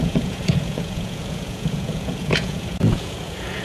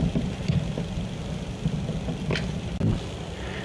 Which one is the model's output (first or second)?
first